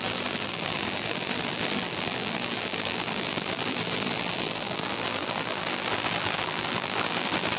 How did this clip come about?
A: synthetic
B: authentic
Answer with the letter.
A